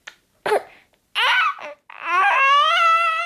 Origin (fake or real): real